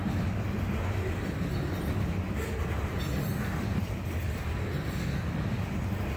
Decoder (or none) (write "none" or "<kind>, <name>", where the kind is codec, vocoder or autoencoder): none